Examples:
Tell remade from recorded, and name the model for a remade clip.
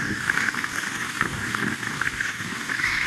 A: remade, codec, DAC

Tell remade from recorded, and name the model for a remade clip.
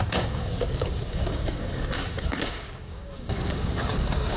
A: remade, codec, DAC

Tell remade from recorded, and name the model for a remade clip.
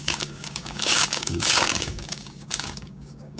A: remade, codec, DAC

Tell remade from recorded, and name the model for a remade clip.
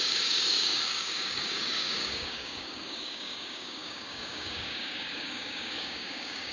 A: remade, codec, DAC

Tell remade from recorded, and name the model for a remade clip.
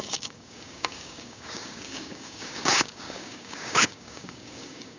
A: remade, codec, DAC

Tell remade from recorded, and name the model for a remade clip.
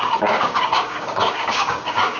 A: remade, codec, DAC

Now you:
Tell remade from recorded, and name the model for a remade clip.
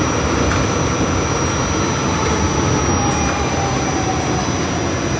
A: recorded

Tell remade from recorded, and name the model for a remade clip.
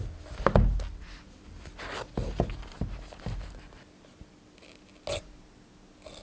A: recorded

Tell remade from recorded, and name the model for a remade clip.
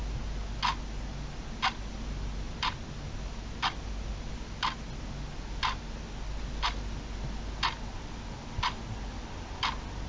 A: recorded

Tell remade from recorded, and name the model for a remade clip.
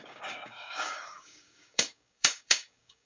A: remade, codec, DAC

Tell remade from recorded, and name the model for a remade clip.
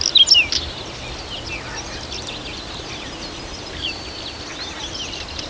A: recorded